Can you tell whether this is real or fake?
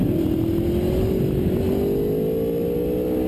real